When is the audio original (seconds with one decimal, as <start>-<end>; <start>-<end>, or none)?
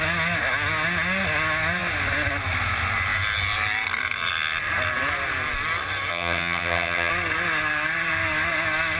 0.0-6.1; 7.1-9.0